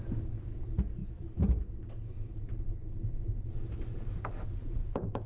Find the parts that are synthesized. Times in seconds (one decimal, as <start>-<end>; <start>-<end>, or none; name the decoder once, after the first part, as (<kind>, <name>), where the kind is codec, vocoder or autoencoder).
4.8-5.3 (autoencoder, DAC-VAE)